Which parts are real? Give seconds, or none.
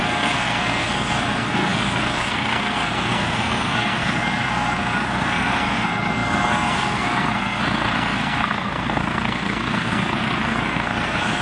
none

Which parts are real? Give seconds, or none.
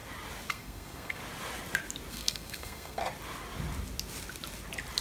0.0-0.5; 1.2-2.1; 3.0-5.0